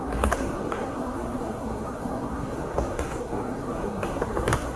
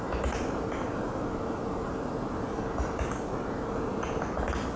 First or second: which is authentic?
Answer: second